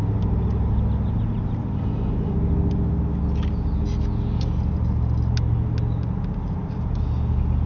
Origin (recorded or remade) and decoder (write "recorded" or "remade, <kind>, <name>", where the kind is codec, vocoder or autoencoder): recorded